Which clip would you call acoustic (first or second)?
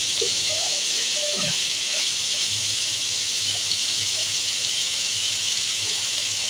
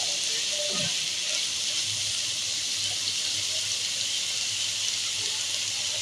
second